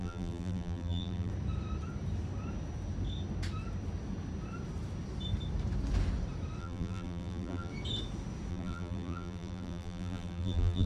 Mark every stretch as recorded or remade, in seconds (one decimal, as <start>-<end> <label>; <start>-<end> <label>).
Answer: 0.0-1.3 remade; 1.3-6.6 recorded; 6.6-7.7 remade; 7.7-8.5 recorded; 8.5-10.9 remade